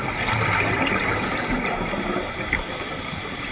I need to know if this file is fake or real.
real